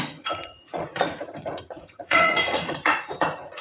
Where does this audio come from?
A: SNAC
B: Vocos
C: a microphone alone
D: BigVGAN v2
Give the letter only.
B